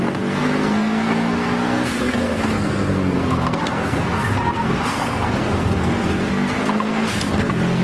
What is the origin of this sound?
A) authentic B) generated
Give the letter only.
B